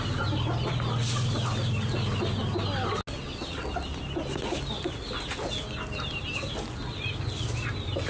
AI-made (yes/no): no